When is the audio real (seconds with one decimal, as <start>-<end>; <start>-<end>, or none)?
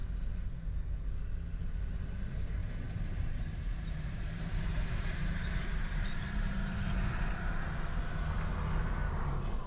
0.0-2.6; 7.6-9.7